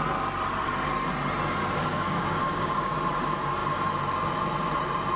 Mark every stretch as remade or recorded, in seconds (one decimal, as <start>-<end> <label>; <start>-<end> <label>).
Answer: 0.0-1.6 recorded; 1.6-2.9 remade; 2.9-5.2 recorded